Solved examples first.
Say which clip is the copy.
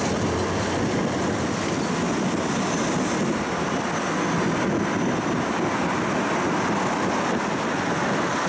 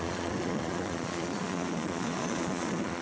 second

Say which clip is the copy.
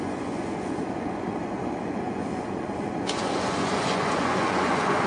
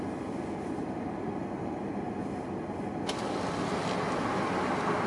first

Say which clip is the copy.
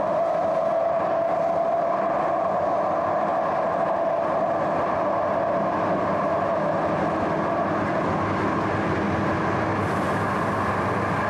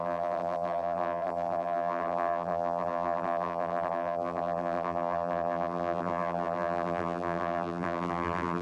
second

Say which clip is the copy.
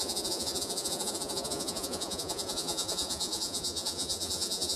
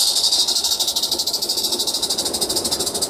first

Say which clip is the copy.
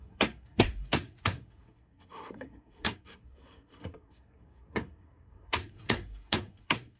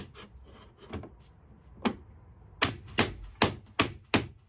first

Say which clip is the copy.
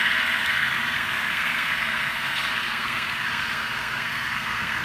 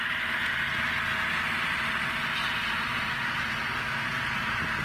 first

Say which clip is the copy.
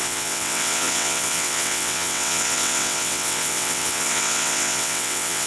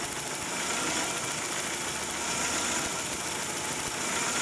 first